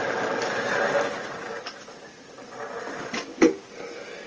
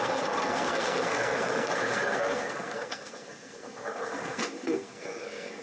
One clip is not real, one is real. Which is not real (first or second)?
second